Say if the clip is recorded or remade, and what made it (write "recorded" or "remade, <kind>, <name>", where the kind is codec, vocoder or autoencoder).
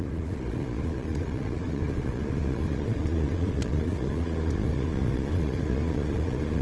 remade, vocoder, Vocos